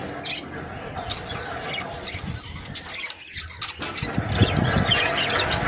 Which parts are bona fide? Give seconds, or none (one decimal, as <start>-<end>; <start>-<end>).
0.0-0.7; 1.7-5.7